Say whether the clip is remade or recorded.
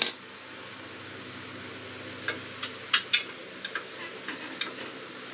recorded